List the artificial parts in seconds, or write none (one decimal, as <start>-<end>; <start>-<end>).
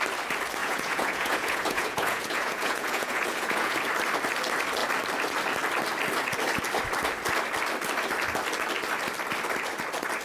0.6-3.8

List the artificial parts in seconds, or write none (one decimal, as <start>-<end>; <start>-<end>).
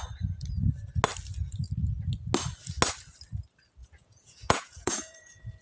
3.8-5.6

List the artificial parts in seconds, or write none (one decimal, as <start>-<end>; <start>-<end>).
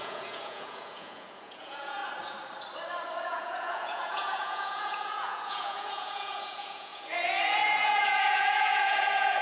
0.0-2.0; 3.2-9.4